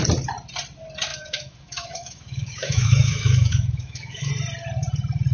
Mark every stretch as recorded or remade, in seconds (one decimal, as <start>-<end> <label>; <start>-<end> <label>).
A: 0.0-1.1 recorded; 1.1-4.3 remade; 4.3-5.3 recorded

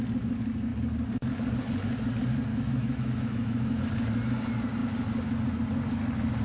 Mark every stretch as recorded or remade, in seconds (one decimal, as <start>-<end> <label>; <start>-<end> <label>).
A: 0.0-2.5 recorded; 2.5-3.8 remade; 3.8-6.4 recorded

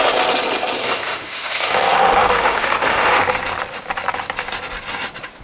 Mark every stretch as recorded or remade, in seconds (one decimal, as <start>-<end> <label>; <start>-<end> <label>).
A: 0.0-0.8 recorded; 0.8-3.2 remade; 3.2-5.4 recorded

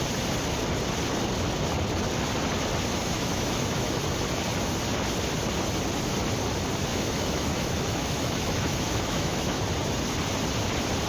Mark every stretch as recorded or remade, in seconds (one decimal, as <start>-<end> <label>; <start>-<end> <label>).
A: 0.0-3.0 recorded; 3.0-4.0 remade; 4.0-6.9 recorded; 6.9-9.6 remade; 9.6-11.1 recorded

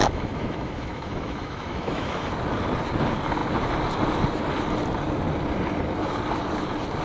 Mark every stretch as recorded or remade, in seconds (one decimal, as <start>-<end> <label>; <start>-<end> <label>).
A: 0.0-2.3 remade; 2.3-7.0 recorded